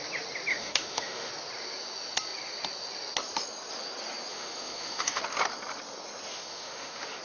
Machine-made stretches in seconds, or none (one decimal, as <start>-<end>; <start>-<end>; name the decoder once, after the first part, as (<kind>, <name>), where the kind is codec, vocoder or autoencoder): 0.5-1.3 (autoencoder, DAC-VAE); 4.3-5.2; 6.3-7.2